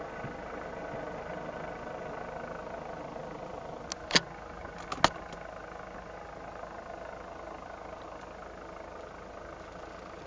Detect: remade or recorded recorded